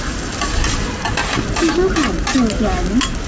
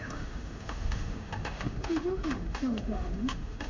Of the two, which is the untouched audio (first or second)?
first